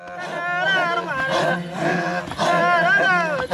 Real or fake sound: real